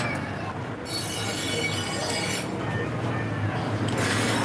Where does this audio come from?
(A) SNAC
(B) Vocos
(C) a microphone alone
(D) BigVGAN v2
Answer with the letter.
C